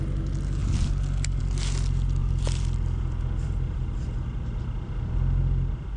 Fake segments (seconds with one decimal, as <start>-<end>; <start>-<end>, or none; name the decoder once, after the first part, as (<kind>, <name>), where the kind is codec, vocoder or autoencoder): 2.2-6.0 (vocoder, BigVGAN v2)